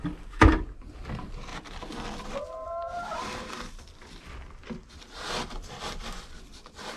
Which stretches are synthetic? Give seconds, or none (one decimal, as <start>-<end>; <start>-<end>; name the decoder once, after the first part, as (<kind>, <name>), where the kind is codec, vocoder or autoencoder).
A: none